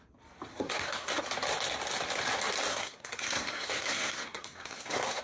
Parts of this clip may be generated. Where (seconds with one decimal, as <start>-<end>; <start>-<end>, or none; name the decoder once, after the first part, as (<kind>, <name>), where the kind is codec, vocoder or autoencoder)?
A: 0.5-1.2 (codec, SNAC); 2.7-5.2